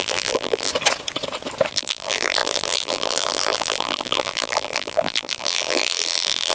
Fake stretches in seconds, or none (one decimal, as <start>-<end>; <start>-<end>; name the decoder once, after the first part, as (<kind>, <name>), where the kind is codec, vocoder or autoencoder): 0.0-0.7 (vocoder, BigVGAN v2); 1.7-6.5